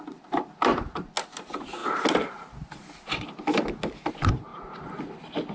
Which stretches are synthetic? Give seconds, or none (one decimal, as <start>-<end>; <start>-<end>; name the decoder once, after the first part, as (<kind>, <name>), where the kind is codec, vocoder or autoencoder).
0.0-0.7 (vocoder, BigVGAN v2); 1.4-1.8; 4.1-4.5; 5.1-5.5